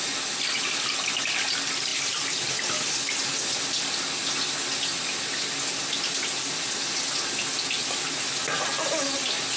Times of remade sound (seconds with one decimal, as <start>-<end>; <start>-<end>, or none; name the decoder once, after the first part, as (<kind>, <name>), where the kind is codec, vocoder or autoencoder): none